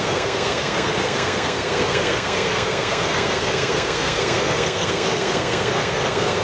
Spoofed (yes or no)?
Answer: yes